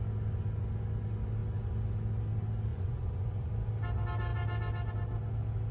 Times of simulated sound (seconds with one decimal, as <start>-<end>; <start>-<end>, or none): 2.7-3.5